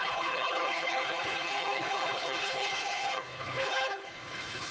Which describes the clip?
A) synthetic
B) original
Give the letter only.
A